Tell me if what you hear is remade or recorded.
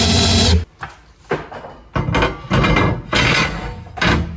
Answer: recorded